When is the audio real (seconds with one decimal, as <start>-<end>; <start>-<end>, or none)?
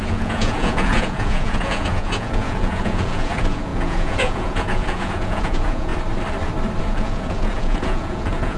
5.9-6.8